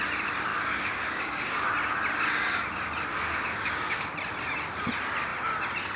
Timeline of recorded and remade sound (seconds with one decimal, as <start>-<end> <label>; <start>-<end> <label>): 0.0-0.5 recorded; 0.5-1.7 remade; 1.7-3.1 recorded; 3.1-4.1 remade; 4.1-6.0 recorded